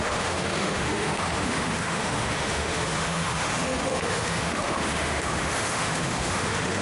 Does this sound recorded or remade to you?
remade